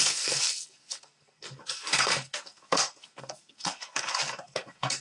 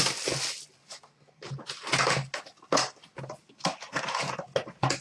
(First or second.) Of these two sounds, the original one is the second